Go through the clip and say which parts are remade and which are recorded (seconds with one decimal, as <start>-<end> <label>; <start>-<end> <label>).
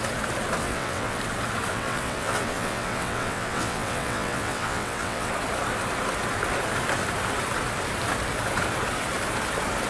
0.0-0.6 recorded; 0.6-1.2 remade; 1.2-1.7 recorded; 1.7-5.3 remade; 5.3-9.9 recorded